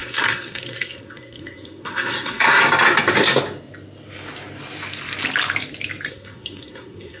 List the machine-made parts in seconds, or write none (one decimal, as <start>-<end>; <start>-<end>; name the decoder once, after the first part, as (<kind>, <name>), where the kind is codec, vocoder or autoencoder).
0.0-2.6 (codec, SNAC); 6.1-7.2